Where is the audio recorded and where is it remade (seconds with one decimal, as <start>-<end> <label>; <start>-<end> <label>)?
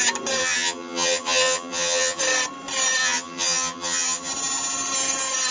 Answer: 0.0-0.4 recorded; 0.4-2.2 remade; 2.2-3.0 recorded; 3.0-4.3 remade; 4.3-5.5 recorded